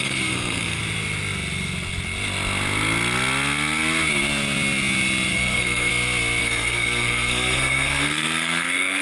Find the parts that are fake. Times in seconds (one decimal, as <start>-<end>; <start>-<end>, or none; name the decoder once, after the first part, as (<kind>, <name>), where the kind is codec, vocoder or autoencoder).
0.0-0.8 (codec, SNAC); 5.3-5.9; 6.4-9.0